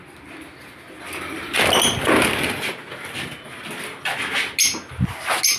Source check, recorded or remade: recorded